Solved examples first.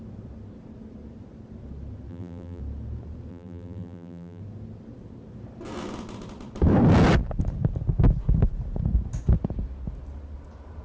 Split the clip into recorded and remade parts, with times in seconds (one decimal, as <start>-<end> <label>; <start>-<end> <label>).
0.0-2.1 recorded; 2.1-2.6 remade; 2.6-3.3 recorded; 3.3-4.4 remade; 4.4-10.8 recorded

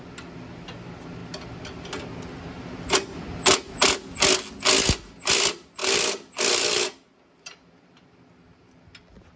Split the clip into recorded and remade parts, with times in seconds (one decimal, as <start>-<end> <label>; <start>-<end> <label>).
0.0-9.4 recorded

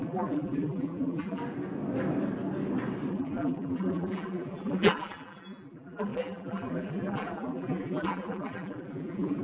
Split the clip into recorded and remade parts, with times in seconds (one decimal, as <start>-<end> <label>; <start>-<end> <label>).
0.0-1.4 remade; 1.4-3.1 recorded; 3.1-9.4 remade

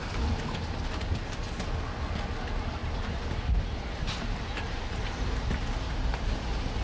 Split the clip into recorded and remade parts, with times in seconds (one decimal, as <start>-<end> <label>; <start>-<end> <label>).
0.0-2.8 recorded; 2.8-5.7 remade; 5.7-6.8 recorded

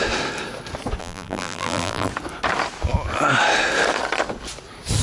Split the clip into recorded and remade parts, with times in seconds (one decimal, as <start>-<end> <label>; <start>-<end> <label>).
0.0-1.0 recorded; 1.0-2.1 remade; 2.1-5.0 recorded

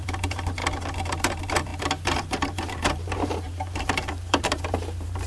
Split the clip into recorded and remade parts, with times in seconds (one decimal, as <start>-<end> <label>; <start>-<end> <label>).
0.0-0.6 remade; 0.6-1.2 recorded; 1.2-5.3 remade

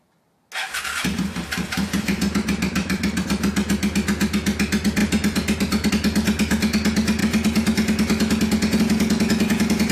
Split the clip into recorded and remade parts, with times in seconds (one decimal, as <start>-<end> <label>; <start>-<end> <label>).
0.0-1.5 recorded; 1.5-3.2 remade; 3.2-5.0 recorded; 5.0-5.9 remade; 5.9-9.9 recorded